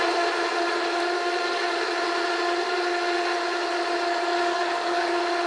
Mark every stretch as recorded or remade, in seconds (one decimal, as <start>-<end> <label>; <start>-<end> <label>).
0.0-4.4 recorded; 4.4-5.1 remade; 5.1-5.5 recorded